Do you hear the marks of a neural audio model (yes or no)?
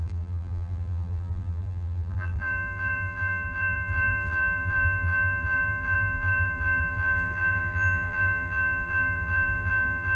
yes